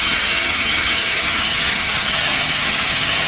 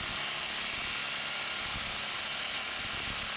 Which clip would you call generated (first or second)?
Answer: first